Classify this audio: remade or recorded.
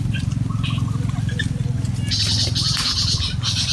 recorded